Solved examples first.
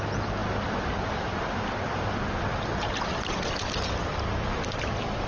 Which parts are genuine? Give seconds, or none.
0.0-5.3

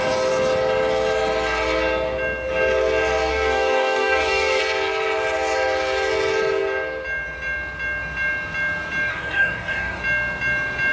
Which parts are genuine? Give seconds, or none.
0.0-3.3; 4.6-9.1; 10.0-10.9